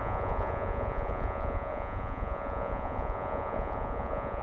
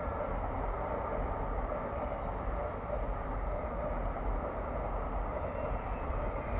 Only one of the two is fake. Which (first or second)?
first